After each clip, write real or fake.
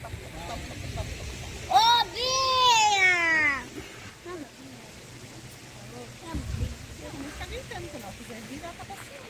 real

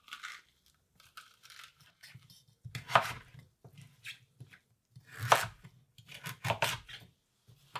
real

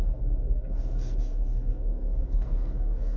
fake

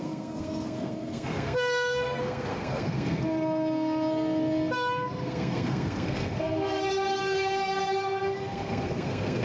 fake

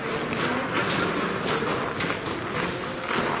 real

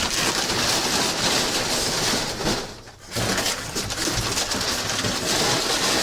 real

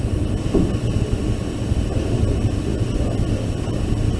real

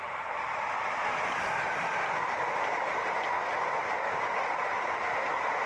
real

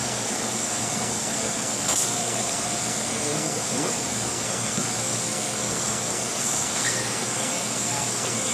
fake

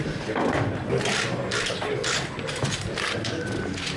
real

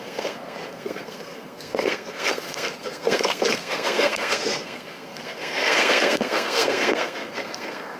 fake